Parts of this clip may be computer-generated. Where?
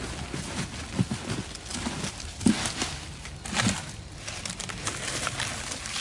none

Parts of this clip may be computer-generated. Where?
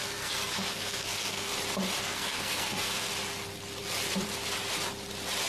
0.0-1.5 (codec, SNAC); 2.0-3.1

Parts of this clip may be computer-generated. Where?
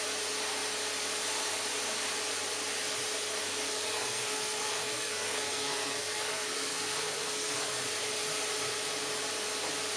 3.4-7.8 (codec, SNAC)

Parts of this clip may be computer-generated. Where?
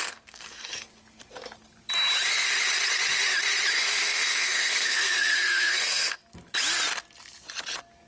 0.0-0.9 (codec, SNAC); 3.7-6.2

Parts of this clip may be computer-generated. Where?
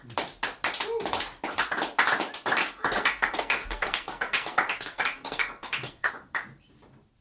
2.6-6.1 (codec, SNAC)